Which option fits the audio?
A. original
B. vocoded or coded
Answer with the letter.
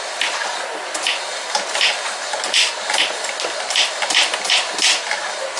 A